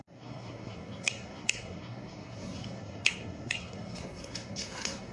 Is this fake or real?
fake